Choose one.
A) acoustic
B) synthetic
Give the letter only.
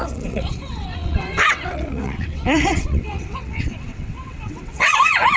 B